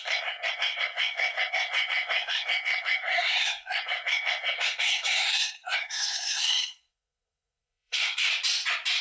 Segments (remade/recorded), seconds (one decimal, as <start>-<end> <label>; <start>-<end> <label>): 0.0-8.3 remade; 8.3-9.0 recorded